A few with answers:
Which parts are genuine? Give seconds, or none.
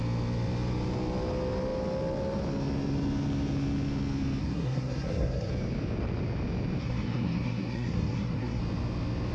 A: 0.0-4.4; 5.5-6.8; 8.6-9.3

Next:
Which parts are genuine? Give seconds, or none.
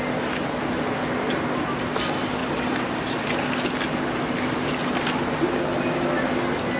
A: 0.0-6.8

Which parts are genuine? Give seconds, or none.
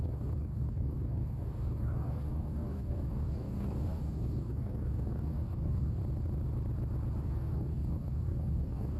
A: 6.0-7.2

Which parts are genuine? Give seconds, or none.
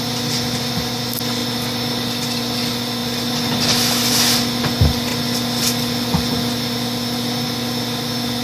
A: 0.0-8.4